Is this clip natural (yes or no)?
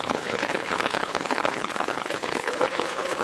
no